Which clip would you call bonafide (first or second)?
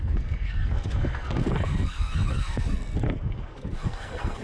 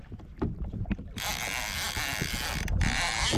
second